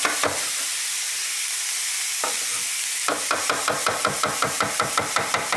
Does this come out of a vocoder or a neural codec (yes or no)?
no